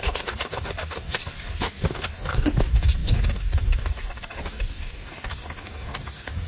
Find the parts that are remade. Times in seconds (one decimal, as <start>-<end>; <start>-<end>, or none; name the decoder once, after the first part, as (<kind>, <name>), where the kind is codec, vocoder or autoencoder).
0.0-6.5 (codec, DAC)